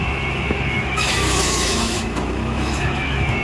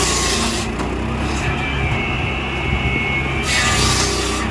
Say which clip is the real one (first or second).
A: second